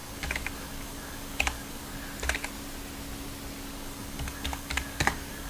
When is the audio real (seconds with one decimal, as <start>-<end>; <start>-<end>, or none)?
1.9-3.7